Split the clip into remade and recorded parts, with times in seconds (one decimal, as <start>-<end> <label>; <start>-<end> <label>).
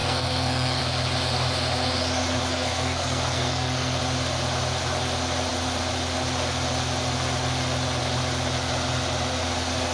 0.0-0.8 remade; 0.8-2.5 recorded; 2.5-4.0 remade; 4.0-9.9 recorded